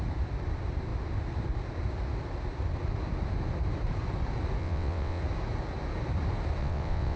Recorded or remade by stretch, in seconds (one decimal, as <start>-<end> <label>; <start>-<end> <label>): 0.0-4.6 recorded; 4.6-5.2 remade; 5.2-6.6 recorded; 6.6-7.2 remade